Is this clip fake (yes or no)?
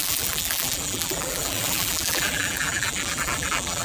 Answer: yes